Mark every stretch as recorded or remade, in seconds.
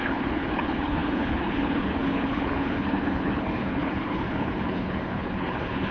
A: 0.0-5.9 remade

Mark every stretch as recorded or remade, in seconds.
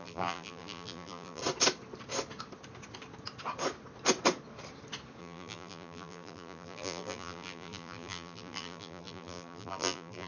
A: 0.0-1.4 remade; 1.4-5.2 recorded; 5.2-10.3 remade